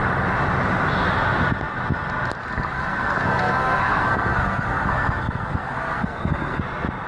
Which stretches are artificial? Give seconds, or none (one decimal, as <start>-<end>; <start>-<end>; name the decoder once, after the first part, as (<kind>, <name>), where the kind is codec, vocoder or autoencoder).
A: 2.4-6.6 (codec, SNAC)